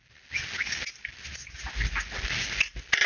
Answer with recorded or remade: recorded